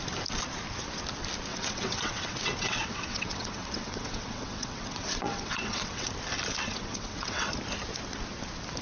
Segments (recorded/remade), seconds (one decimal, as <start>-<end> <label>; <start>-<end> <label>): 0.0-1.5 recorded; 1.5-6.1 remade; 6.1-6.7 recorded; 6.7-7.5 remade; 7.5-8.8 recorded